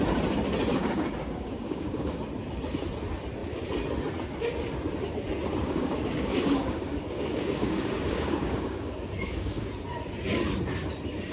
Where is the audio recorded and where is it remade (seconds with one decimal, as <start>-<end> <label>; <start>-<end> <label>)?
0.0-0.7 recorded; 0.7-2.2 remade; 2.2-5.5 recorded; 5.5-9.7 remade; 9.7-11.3 recorded